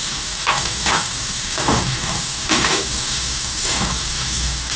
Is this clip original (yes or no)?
no